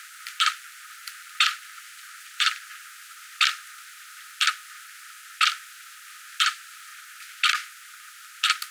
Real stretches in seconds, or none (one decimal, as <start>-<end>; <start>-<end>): 2.7-6.4; 6.9-8.7